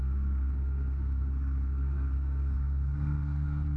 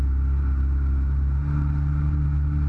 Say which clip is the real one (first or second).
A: second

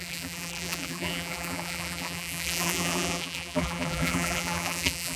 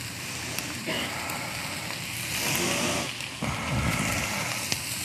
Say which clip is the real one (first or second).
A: second